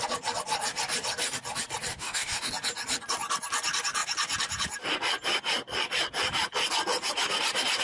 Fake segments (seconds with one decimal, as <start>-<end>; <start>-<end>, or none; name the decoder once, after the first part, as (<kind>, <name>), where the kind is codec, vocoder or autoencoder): 1.9-2.5 (autoencoder, DAC-VAE)